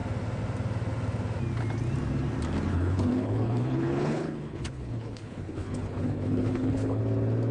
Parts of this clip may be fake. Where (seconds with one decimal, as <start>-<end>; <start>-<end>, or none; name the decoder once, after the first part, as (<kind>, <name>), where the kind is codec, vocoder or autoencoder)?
2.7-7.0 (codec, HILCodec)